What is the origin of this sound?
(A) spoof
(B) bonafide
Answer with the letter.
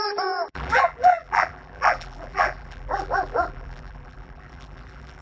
A